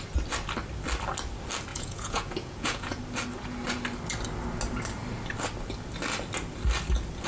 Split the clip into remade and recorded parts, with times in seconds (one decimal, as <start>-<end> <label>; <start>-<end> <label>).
0.0-1.7 recorded; 1.7-3.0 remade; 3.0-7.3 recorded